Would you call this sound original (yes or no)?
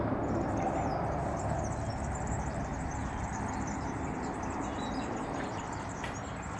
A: no